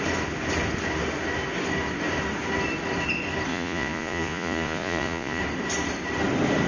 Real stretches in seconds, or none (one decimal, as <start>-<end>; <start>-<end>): 0.0-3.5; 5.4-6.7